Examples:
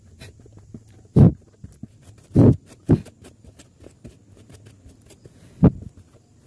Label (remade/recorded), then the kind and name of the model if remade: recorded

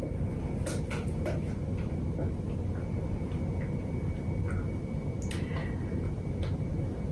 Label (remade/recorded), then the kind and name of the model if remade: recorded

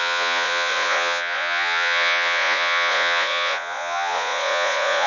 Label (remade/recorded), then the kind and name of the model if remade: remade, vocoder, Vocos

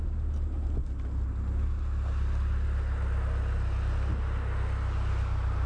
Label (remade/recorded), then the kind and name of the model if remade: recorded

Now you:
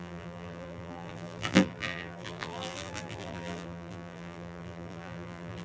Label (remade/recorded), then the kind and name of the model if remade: remade, vocoder, BigVGAN v2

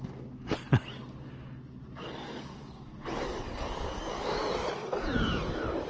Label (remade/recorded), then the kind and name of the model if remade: recorded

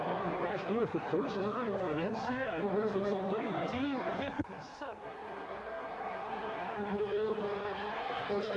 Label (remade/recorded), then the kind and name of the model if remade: remade, codec, SNAC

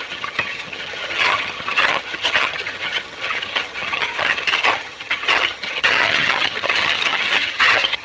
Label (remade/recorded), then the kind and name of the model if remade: remade, vocoder, HiFi-GAN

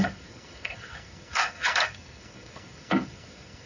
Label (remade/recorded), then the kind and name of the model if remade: remade, codec, SNAC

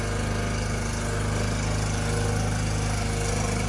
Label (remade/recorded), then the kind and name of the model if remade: recorded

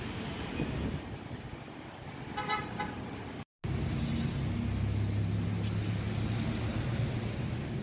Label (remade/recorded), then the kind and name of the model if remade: recorded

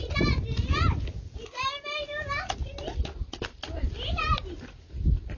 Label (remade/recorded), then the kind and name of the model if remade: recorded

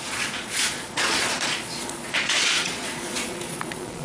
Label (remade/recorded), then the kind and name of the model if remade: remade, vocoder, Vocos